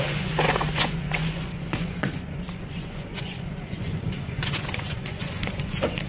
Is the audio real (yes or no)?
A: no